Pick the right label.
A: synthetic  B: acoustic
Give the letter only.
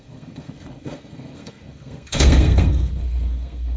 A